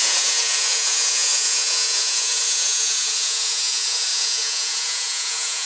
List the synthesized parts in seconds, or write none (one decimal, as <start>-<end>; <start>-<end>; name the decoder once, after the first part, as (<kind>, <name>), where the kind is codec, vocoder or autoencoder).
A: 0.0-5.7 (vocoder, Vocos)